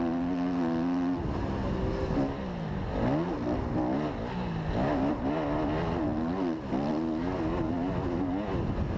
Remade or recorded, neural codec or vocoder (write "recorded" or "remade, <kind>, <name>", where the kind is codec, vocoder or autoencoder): recorded